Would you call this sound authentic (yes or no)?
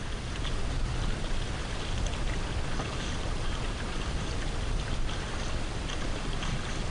yes